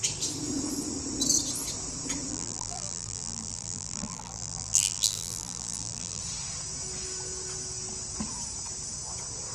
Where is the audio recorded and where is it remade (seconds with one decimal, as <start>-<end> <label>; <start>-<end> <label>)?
0.0-2.3 recorded; 2.3-6.2 remade; 6.2-9.5 recorded